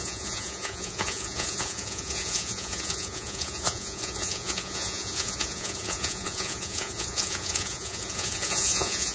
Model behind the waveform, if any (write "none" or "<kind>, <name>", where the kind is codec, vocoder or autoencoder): vocoder, Vocos